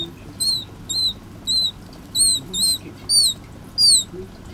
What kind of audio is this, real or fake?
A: real